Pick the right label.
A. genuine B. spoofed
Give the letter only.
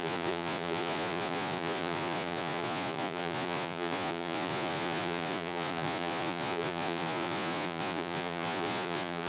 B